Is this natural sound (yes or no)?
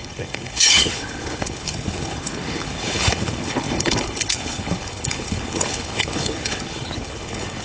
no